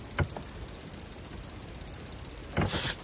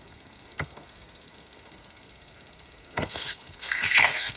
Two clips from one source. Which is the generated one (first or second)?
second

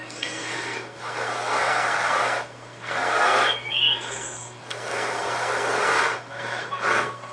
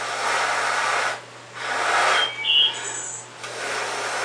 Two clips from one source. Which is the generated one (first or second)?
first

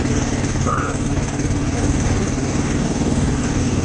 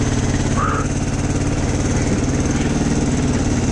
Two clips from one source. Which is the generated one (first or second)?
first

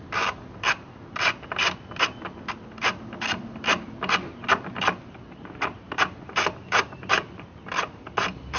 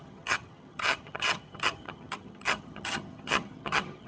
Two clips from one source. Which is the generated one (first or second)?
second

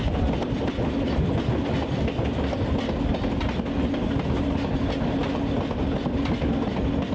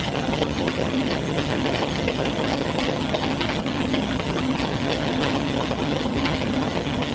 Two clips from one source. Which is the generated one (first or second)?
second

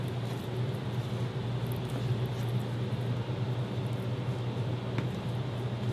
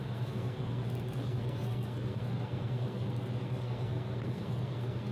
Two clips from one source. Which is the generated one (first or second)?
second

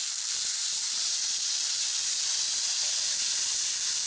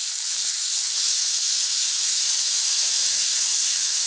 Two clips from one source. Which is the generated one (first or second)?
second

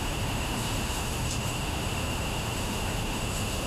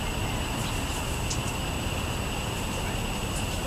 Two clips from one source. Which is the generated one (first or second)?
first